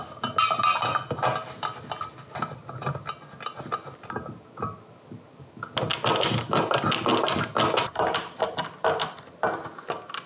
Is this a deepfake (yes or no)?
no